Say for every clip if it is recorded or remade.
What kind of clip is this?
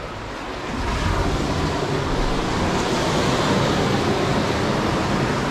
recorded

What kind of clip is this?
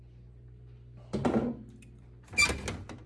recorded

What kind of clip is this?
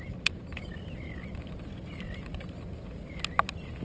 recorded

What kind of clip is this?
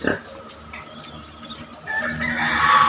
recorded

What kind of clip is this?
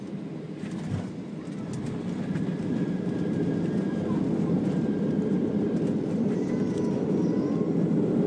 recorded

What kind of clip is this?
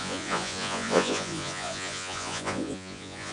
remade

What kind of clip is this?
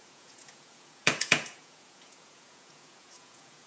remade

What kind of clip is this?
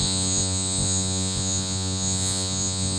remade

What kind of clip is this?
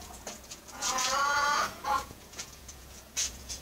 remade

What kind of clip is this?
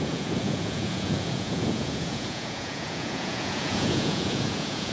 remade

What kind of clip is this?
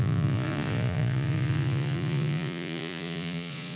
remade